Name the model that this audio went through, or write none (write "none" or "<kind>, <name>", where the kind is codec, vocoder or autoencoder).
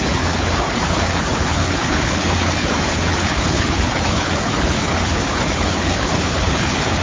codec, HILCodec